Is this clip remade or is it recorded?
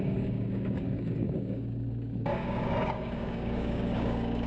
remade